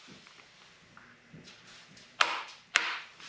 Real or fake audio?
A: fake